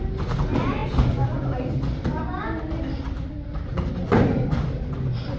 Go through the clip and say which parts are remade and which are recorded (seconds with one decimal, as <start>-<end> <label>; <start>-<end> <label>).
0.0-5.4 recorded